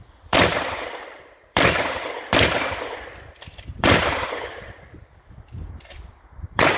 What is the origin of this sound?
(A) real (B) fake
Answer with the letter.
B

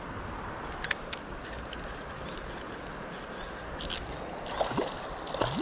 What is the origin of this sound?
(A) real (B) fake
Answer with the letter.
A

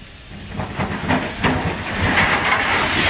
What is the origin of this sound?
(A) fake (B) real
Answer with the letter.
B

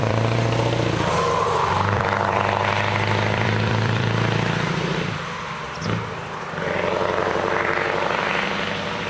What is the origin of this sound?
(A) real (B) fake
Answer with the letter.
B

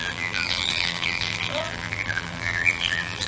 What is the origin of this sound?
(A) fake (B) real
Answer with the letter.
A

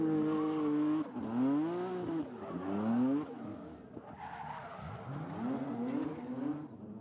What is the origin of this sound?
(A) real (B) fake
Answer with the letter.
A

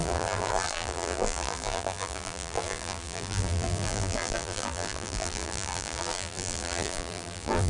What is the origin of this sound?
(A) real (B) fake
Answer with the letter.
B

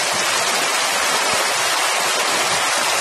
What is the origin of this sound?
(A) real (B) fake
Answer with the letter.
A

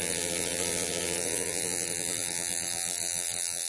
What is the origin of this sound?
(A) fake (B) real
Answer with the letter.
A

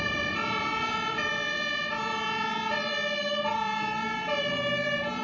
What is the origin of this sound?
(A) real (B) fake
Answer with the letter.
B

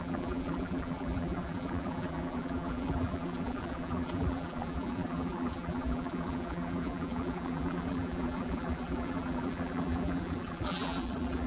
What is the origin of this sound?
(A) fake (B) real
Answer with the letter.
A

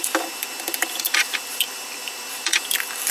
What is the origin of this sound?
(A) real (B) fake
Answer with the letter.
B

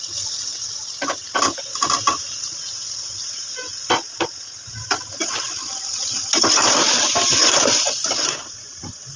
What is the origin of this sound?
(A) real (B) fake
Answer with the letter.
A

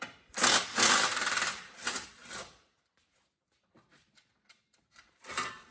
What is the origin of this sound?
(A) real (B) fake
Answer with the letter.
B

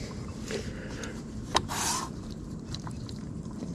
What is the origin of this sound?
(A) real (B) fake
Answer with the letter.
B